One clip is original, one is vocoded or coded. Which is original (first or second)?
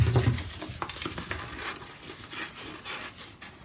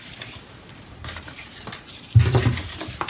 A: first